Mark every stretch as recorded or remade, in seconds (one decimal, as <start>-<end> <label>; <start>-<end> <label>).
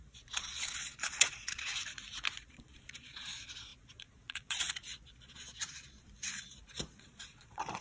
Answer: 0.0-1.7 remade; 1.7-2.4 recorded; 2.4-7.8 remade